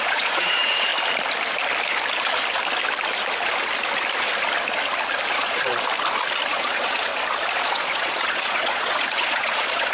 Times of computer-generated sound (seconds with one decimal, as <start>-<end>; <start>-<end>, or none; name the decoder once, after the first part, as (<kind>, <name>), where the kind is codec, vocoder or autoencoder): 0.0-0.9 (vocoder, Vocos); 5.3-5.7; 6.5-7.1; 7.6-9.9